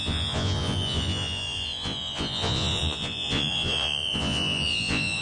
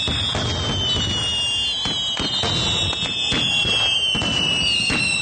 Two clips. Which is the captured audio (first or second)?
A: second